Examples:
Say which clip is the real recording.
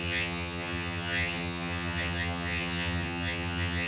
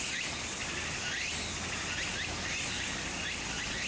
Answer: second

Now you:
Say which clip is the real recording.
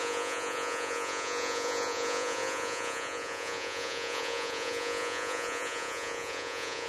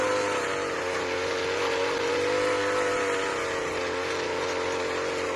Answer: second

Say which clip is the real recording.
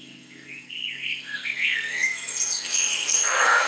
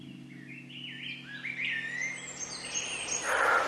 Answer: second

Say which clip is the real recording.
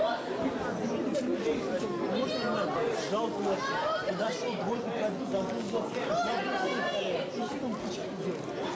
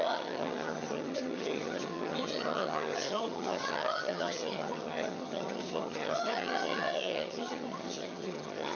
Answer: first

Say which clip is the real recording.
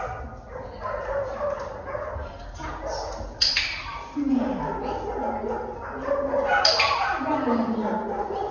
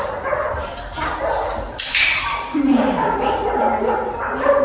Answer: first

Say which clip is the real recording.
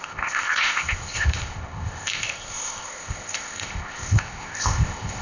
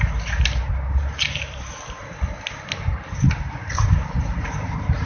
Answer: second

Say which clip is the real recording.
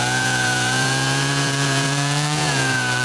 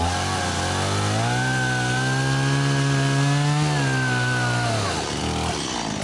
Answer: second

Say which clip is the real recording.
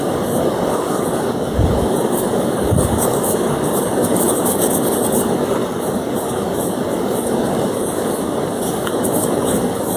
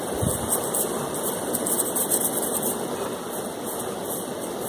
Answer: second